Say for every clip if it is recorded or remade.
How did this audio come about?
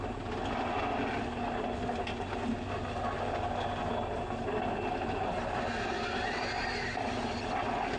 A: recorded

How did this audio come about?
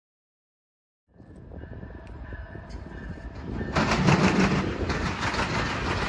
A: recorded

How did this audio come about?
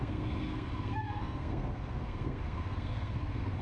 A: remade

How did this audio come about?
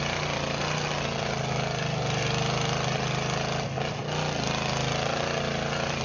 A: recorded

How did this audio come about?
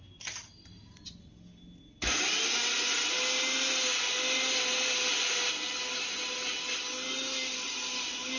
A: recorded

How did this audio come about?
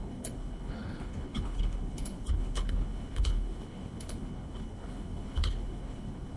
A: remade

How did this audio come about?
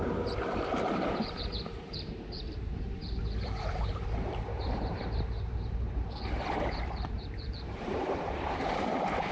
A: remade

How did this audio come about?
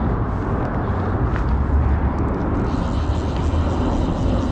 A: recorded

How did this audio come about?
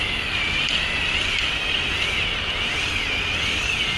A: recorded